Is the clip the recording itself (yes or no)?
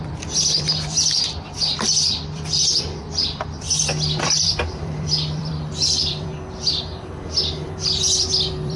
no